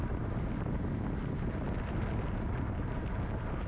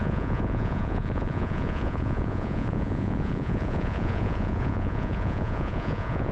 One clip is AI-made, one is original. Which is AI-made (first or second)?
second